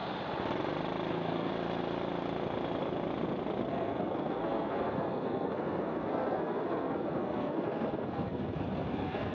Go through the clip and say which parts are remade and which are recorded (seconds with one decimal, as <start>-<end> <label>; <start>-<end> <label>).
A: 0.0-1.1 recorded; 1.1-1.5 remade; 1.5-3.7 recorded; 3.7-9.3 remade